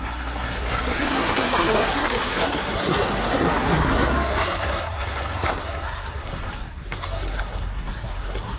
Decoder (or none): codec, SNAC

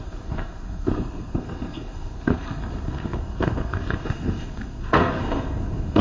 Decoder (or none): codec, SNAC